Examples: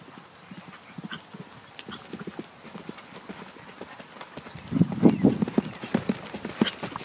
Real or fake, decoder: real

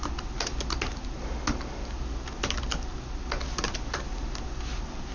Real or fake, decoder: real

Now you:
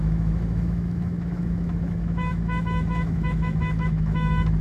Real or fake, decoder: fake, autoencoder, DAC-VAE